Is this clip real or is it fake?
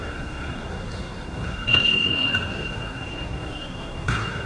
fake